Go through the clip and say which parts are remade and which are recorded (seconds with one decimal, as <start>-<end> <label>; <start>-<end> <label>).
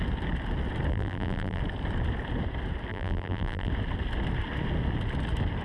0.0-0.9 recorded; 0.9-1.6 remade; 1.6-2.9 recorded; 2.9-3.7 remade; 3.7-5.6 recorded